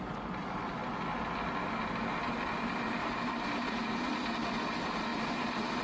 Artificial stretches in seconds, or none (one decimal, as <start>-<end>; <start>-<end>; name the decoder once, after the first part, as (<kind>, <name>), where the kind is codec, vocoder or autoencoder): 3.0-4.0 (vocoder, BigVGAN v2); 5.1-5.8